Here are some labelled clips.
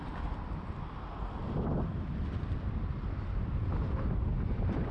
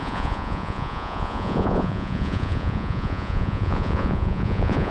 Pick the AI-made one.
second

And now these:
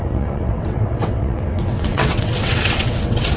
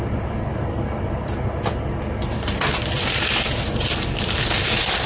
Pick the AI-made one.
first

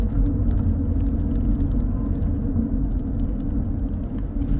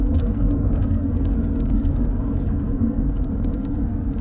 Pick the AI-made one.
second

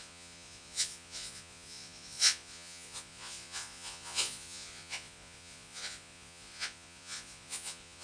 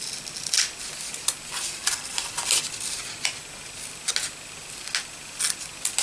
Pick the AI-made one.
first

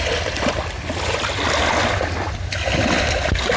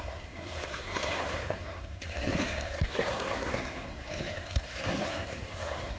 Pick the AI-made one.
second